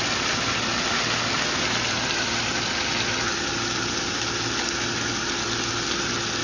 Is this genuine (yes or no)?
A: yes